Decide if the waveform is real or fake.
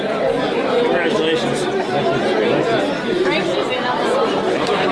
real